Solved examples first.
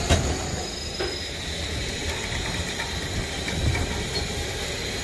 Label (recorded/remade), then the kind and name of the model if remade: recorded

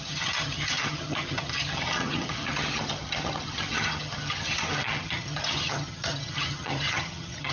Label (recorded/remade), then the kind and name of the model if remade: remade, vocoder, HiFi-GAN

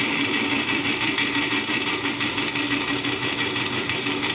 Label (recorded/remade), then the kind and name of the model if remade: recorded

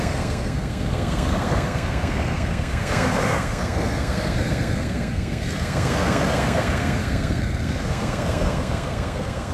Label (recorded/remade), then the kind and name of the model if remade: remade, codec, SNAC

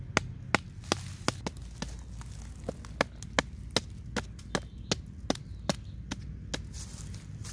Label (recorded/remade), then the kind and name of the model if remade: recorded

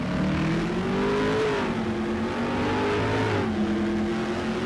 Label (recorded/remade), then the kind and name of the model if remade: recorded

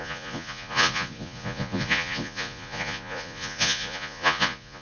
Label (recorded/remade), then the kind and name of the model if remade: remade, vocoder, Vocos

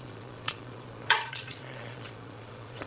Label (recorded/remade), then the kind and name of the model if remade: remade, vocoder, Vocos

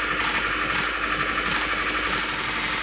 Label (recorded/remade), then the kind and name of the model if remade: recorded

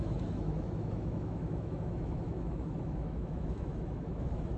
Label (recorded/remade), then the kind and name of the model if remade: remade, autoencoder, DAC-VAE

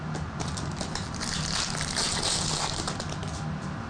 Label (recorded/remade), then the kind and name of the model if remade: recorded